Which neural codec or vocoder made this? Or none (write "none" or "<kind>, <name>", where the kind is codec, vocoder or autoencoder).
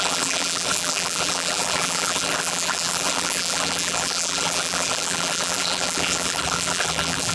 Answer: vocoder, BigVGAN v2